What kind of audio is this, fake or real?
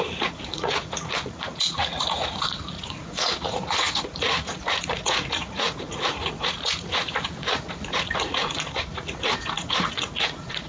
fake